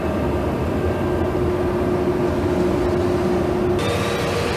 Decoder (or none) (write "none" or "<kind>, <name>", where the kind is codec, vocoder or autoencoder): none